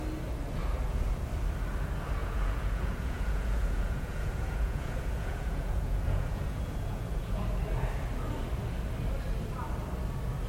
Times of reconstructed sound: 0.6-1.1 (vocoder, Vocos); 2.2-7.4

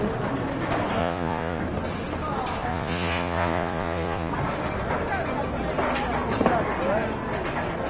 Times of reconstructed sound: 1.0-1.6 (vocoder, Vocos); 2.7-4.3

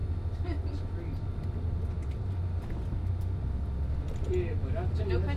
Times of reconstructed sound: none

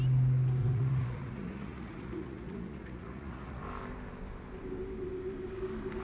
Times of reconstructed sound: 0.6-3.6 (vocoder, Vocos)

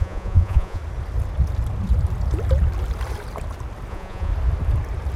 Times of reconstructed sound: 0.0-0.8 (vocoder, Vocos); 3.9-4.3

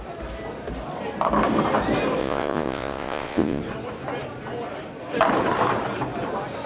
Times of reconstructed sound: 2.2-3.6 (vocoder, Vocos)

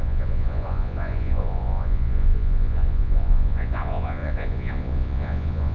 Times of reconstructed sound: 0.0-5.7 (vocoder, Vocos)